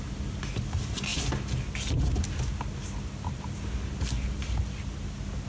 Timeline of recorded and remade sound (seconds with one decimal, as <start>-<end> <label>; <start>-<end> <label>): 0.0-5.5 recorded